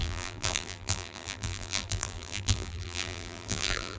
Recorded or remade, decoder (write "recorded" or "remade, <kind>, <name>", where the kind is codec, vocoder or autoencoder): remade, vocoder, BigVGAN v2